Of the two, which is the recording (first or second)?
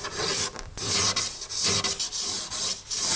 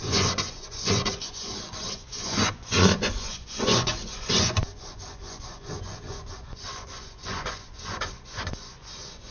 first